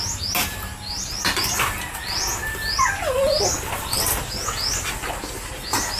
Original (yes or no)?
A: yes